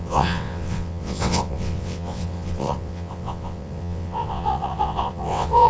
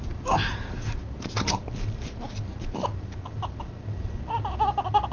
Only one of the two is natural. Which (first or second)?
second